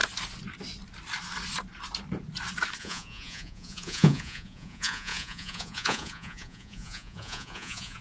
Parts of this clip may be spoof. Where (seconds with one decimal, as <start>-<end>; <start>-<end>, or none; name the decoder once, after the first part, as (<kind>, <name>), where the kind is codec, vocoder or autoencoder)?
2.8-8.0 (vocoder, Vocos)